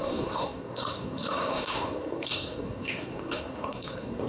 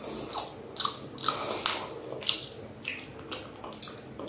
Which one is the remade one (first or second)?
first